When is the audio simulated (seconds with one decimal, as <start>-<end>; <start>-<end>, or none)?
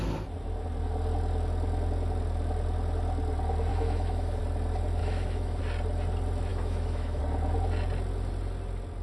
3.7-4.4; 5.0-5.6; 6.5-7.2